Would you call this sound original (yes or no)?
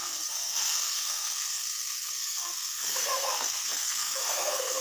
no